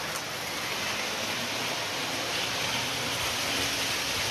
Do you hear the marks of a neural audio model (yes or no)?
no